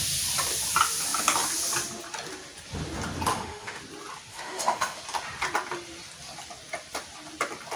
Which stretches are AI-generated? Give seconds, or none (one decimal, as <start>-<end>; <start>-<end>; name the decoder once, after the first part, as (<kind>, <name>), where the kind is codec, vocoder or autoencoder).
3.3-3.8 (autoencoder, DAC-VAE); 4.3-5.0